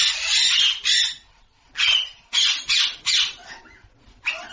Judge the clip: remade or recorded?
recorded